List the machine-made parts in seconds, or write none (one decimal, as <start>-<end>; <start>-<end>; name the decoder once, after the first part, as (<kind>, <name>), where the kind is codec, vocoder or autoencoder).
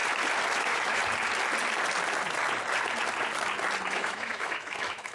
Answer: 0.6-1.0 (autoencoder, DAC-VAE); 3.9-5.1